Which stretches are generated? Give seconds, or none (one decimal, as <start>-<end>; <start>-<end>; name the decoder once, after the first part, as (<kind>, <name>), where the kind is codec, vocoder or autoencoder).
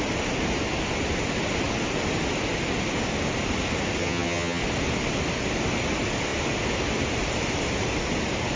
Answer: 4.0-4.6 (vocoder, HiFi-GAN)